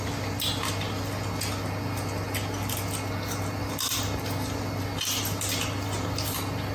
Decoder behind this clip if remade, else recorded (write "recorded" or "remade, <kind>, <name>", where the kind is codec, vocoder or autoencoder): recorded